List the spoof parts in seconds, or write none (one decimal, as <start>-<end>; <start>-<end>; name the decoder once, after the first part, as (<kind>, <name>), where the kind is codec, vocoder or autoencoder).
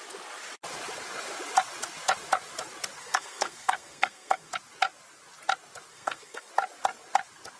3.0-4.5 (codec, SNAC); 5.9-6.5